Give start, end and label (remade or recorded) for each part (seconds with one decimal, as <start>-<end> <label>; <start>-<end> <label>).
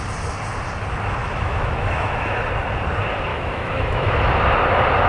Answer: 0.0-1.2 recorded; 1.2-2.5 remade; 2.5-3.3 recorded; 3.3-4.4 remade; 4.4-5.1 recorded